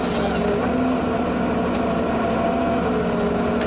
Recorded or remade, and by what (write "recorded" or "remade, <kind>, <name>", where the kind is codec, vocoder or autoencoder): recorded